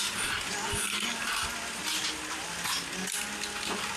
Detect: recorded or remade recorded